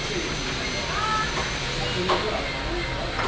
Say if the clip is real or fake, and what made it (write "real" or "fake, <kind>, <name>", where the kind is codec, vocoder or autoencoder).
real